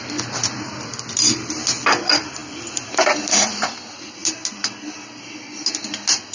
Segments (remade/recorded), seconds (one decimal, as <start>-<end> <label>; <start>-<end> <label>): 0.0-6.3 recorded